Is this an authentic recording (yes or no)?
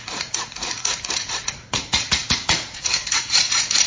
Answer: no